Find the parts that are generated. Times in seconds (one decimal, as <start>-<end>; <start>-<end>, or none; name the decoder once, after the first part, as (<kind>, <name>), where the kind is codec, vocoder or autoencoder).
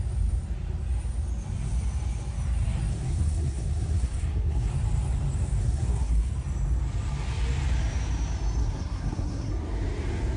2.9-4.7 (codec, SNAC); 5.6-6.3; 8.6-9.5